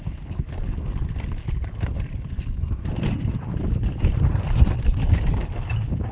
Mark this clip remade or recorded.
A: remade